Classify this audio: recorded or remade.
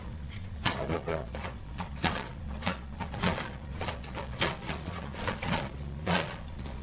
remade